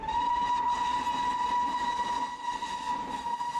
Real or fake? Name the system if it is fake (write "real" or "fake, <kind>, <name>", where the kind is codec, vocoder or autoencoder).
real